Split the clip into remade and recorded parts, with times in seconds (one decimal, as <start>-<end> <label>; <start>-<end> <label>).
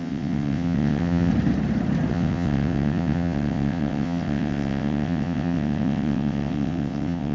0.0-1.3 remade; 1.3-2.1 recorded; 2.1-7.3 remade